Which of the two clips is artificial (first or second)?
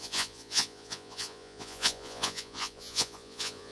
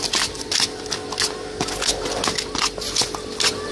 first